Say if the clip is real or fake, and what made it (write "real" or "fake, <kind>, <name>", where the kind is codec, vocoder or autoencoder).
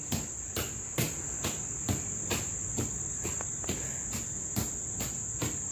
real